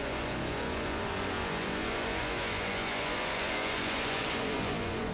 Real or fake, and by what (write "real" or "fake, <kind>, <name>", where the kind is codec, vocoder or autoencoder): fake, vocoder, Vocos